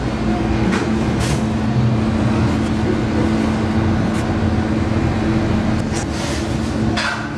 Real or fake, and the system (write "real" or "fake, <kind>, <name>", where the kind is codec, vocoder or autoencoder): real